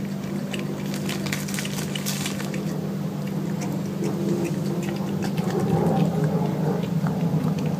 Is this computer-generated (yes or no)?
no